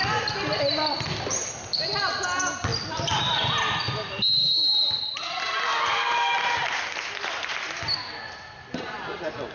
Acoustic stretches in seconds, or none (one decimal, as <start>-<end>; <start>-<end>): 1.5-9.5